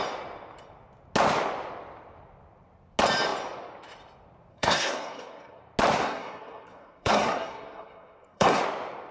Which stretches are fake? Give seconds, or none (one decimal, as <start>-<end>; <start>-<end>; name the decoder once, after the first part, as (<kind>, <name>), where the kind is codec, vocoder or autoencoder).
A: 4.5-5.6 (codec, SNAC); 6.0-8.6